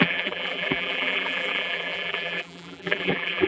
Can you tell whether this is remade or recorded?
remade